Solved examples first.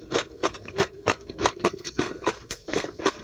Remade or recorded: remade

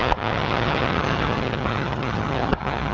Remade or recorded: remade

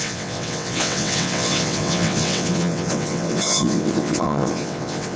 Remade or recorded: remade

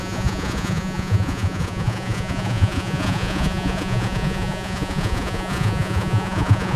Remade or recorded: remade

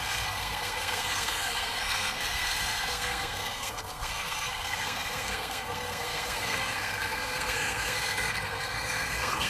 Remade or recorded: remade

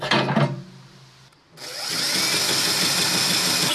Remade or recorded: recorded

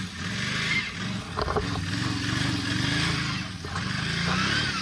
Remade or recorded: recorded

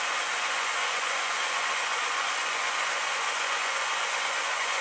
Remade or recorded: remade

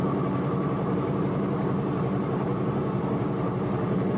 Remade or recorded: remade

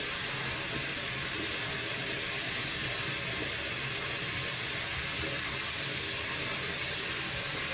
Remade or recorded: recorded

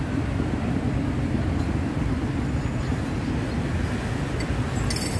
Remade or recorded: recorded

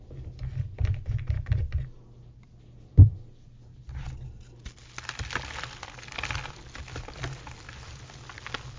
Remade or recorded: recorded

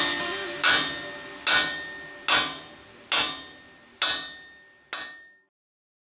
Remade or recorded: recorded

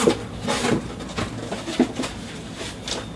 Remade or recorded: recorded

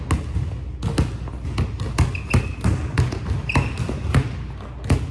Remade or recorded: recorded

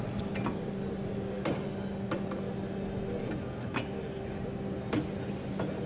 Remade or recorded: recorded